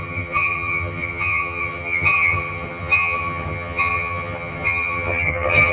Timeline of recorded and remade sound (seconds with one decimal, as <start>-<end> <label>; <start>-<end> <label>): 0.0-5.7 remade